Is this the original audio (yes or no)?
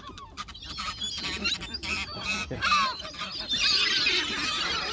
no